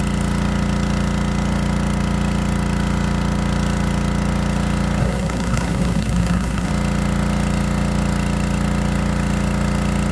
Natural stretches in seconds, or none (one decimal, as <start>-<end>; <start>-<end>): 0.0-5.0; 6.7-10.1